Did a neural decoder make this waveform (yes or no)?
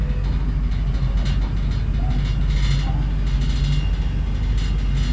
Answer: no